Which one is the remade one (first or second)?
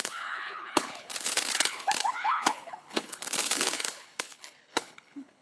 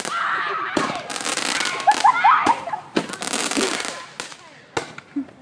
first